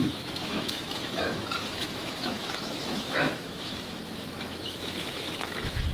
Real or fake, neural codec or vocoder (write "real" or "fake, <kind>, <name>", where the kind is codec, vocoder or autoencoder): fake, autoencoder, DAC-VAE